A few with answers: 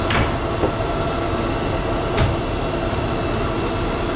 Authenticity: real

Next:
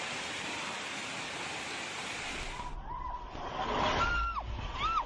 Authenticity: real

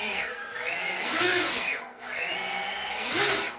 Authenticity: fake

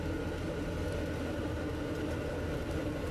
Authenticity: real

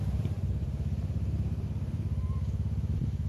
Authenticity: fake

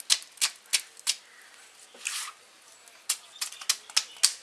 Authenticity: real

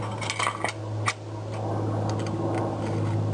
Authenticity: real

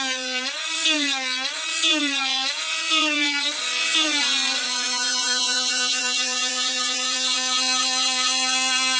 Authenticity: fake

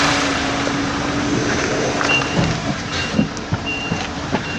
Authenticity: fake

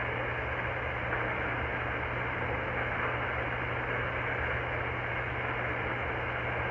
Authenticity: real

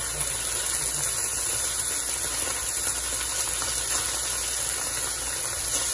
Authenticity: real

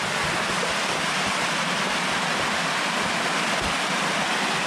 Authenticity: real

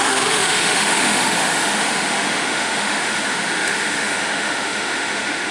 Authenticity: fake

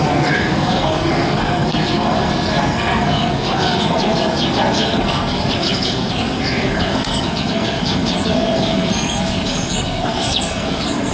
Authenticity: fake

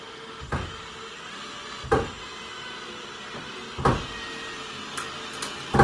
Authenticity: real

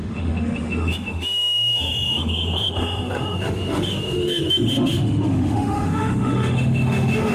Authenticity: fake